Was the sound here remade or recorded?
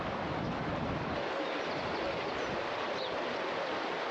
recorded